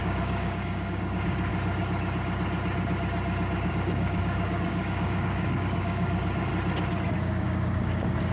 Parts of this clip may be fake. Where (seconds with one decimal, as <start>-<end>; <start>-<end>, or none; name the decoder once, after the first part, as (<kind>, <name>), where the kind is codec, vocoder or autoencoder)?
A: 0.0-1.5 (codec, DAC); 3.7-6.5; 7.1-8.3